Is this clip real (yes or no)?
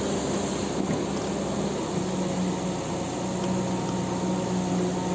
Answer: yes